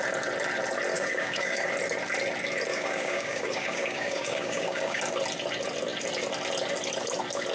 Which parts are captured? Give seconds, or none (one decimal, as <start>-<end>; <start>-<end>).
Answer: 0.0-0.9; 1.7-2.7; 5.0-7.5